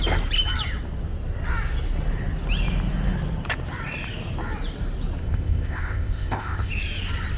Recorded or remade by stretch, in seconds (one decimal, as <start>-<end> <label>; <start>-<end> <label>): 0.0-5.2 recorded; 5.2-6.7 remade; 6.7-7.4 recorded

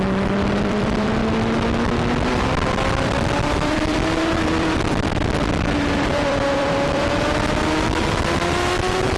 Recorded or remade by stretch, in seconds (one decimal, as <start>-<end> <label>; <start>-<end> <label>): 0.0-1.2 remade; 1.2-2.3 recorded; 2.3-9.2 remade

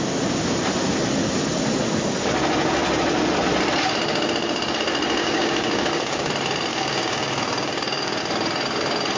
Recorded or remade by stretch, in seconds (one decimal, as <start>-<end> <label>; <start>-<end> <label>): 0.0-5.2 recorded; 5.2-6.3 remade; 6.3-6.7 recorded; 6.7-8.2 remade; 8.2-9.2 recorded

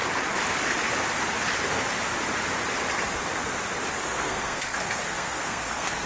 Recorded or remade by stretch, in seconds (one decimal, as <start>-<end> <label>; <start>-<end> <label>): 0.0-4.0 recorded; 4.0-6.1 remade